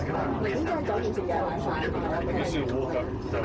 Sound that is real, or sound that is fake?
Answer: real